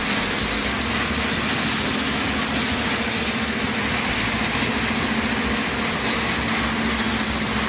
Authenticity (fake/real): real